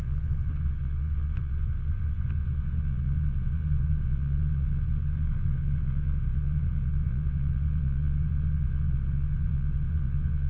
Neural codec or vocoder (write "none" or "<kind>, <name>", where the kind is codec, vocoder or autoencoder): vocoder, Vocos